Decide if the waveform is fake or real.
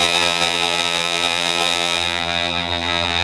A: fake